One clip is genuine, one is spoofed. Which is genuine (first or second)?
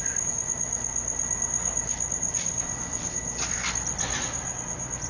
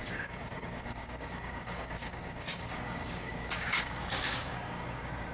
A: first